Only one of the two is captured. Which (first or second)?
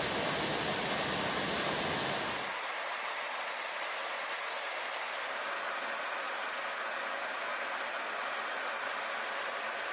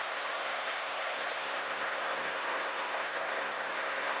first